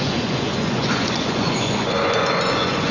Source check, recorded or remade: remade